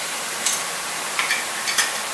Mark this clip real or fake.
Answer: fake